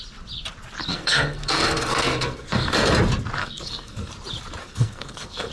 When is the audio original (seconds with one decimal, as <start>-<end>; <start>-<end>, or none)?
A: 0.0-0.9; 2.9-3.4; 4.1-4.6